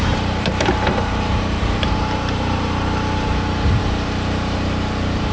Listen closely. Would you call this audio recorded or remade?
remade